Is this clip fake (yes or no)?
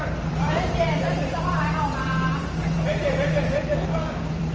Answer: yes